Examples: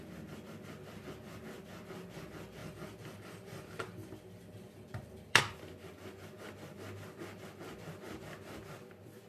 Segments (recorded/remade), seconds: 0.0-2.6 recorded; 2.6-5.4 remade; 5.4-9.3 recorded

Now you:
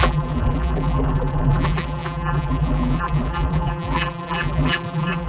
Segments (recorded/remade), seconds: 0.0-5.3 remade

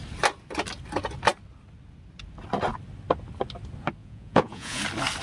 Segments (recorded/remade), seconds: 0.0-4.0 recorded; 4.0-4.8 remade; 4.8-5.2 recorded

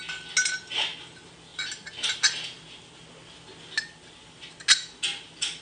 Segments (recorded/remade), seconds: 0.0-5.6 recorded

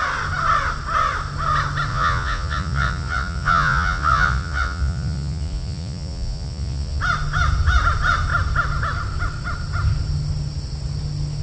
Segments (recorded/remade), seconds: 0.0-1.9 recorded; 1.9-7.0 remade; 7.0-11.4 recorded

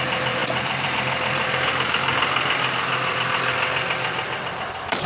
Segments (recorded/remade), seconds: 0.0-5.1 remade